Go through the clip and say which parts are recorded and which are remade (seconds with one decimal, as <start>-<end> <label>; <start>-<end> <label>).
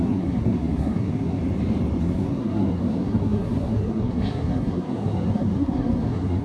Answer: 0.0-1.4 remade; 1.4-2.0 recorded; 2.0-6.4 remade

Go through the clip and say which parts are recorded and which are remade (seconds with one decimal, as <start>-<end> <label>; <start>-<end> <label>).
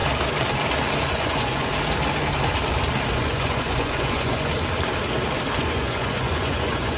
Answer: 0.0-1.0 recorded; 1.0-1.7 remade; 1.7-3.1 recorded; 3.1-4.5 remade; 4.5-5.6 recorded; 5.6-7.0 remade